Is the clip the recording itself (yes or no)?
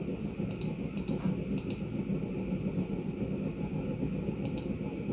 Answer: yes